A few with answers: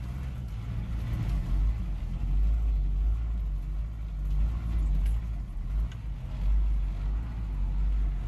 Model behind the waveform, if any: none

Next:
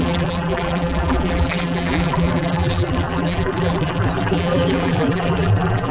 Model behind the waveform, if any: vocoder, BigVGAN v2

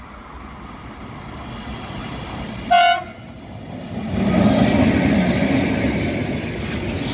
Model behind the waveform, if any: none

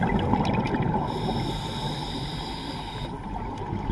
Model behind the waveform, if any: none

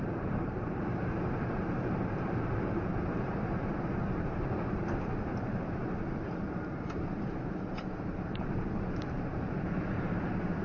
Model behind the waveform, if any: vocoder, BigVGAN v2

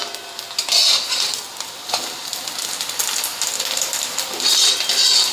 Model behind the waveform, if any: none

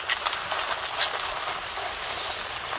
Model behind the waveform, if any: none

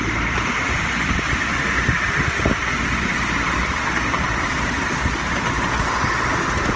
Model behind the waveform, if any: none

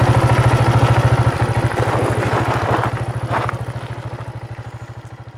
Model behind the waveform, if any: none